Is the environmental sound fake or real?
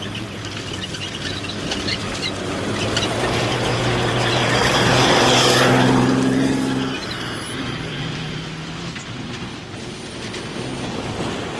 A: real